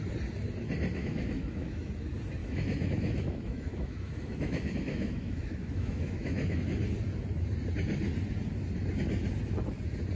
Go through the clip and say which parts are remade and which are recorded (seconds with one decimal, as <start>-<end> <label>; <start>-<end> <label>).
0.0-1.0 recorded; 1.0-1.9 remade; 1.9-2.4 recorded; 2.4-6.6 remade; 6.6-10.2 recorded